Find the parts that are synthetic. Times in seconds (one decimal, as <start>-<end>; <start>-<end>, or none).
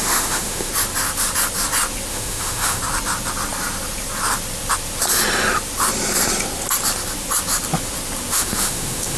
0.0-0.7; 2.1-2.8; 8.3-9.2